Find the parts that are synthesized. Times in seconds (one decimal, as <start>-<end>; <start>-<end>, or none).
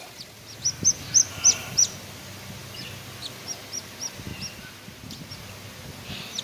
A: none